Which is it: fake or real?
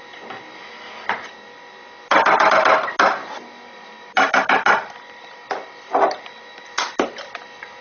real